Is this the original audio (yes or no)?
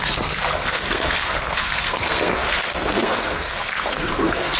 no